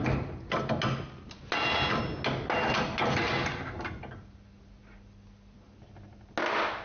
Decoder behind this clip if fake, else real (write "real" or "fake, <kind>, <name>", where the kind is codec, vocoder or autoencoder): real